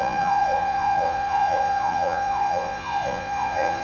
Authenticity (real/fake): fake